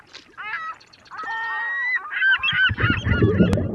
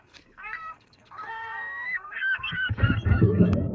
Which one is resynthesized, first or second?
second